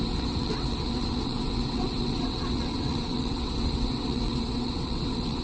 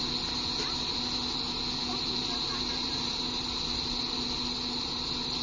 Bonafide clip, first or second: second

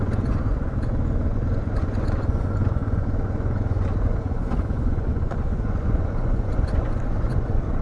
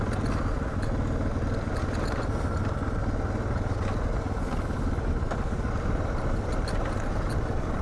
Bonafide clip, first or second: second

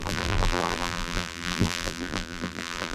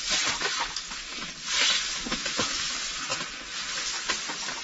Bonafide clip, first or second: second